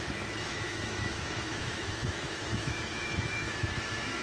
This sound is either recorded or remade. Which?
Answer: remade